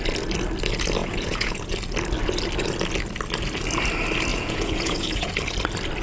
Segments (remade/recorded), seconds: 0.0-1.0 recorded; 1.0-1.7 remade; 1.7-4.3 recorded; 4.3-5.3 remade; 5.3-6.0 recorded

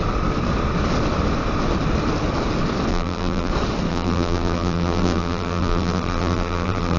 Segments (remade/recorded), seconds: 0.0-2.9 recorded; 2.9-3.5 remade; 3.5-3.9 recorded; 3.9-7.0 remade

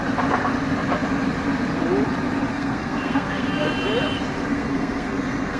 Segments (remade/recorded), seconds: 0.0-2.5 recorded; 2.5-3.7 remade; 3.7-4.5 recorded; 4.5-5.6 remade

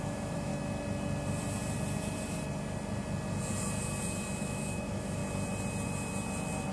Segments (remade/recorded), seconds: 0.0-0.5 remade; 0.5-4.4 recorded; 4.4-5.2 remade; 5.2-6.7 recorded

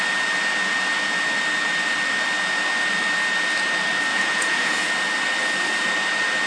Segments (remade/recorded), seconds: 0.0-4.1 recorded; 4.1-4.9 remade; 4.9-6.5 recorded

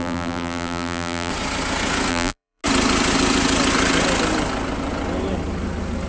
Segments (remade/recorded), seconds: 0.0-1.3 remade; 1.3-2.1 recorded; 2.1-2.6 remade; 2.6-6.1 recorded

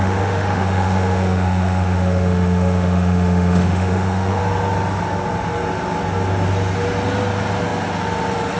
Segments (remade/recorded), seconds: 0.0-4.4 remade; 4.4-8.6 recorded